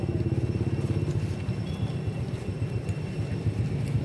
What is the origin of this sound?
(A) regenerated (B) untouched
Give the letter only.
B